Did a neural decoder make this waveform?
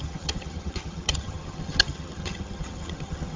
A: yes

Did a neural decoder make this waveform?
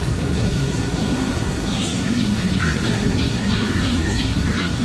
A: yes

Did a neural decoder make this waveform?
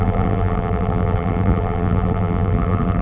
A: yes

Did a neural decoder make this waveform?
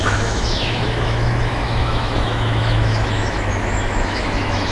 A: yes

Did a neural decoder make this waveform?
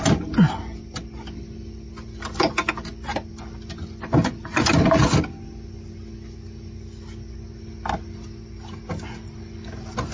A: no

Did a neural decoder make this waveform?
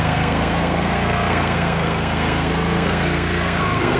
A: yes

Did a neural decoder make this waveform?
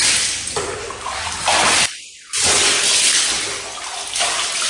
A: no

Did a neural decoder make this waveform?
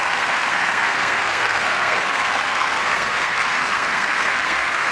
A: yes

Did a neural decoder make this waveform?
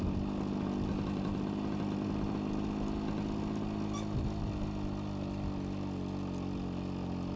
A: no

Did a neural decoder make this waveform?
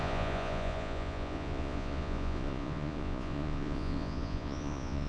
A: yes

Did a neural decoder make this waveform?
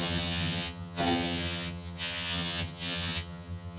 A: yes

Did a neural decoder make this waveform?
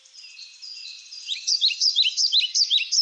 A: yes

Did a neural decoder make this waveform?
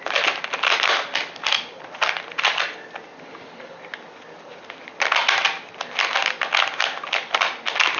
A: no